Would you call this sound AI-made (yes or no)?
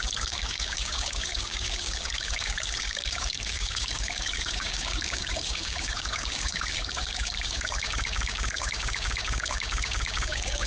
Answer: yes